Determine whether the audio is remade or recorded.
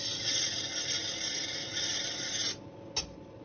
recorded